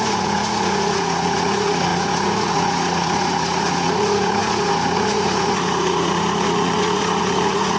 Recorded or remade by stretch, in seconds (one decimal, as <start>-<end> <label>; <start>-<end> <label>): 0.0-7.8 remade